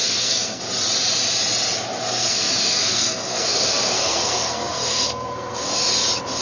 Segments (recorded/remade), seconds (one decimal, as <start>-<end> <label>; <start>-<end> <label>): 0.0-0.6 remade; 0.6-2.0 recorded; 2.0-5.8 remade; 5.8-6.4 recorded